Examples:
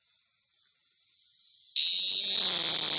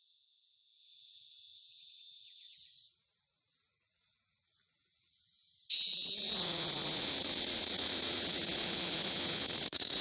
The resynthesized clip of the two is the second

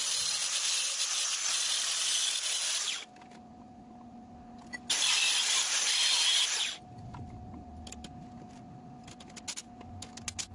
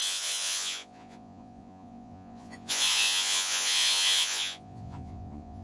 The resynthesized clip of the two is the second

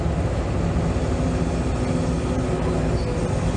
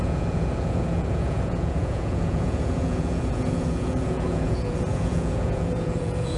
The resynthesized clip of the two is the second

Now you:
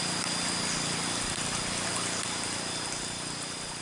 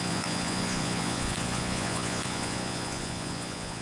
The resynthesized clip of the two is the second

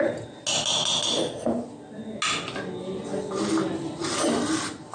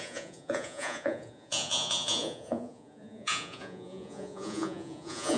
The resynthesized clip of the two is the second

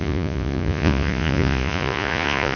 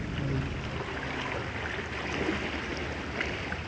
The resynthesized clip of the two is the first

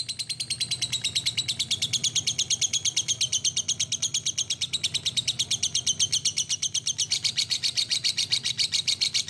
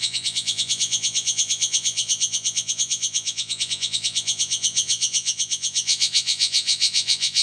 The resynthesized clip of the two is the second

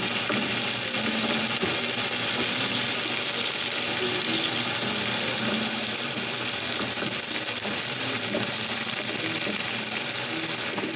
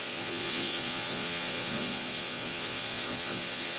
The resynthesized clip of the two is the second